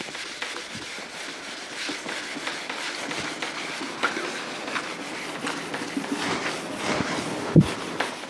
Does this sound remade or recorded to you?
recorded